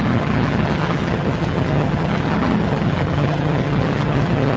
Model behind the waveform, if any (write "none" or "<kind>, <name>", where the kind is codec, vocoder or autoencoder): vocoder, HiFi-GAN